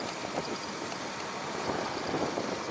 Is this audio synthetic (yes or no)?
no